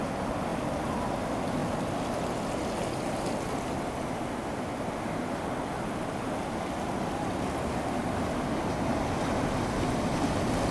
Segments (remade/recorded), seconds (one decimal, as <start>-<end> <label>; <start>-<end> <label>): 0.0-0.5 recorded; 0.5-1.2 remade; 1.2-10.7 recorded